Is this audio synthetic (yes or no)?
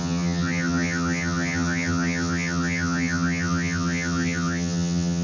yes